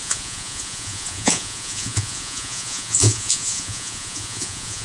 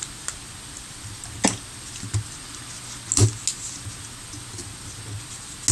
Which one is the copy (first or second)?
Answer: first